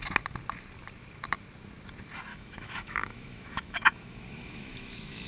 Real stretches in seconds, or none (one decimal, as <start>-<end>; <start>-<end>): 0.0-2.3